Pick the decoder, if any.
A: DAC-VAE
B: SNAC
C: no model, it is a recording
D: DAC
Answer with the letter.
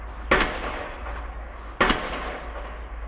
C